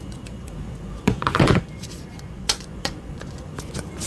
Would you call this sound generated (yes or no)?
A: yes